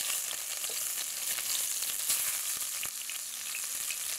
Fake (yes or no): no